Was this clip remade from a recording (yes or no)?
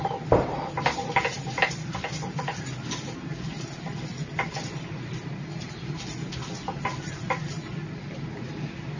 no